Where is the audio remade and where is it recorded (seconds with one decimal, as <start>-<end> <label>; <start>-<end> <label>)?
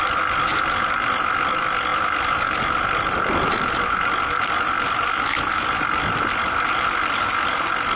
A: 0.0-8.0 recorded